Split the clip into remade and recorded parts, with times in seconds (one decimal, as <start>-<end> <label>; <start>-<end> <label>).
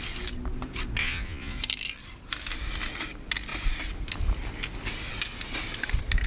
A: 0.0-1.0 recorded; 1.0-1.6 remade; 1.6-6.3 recorded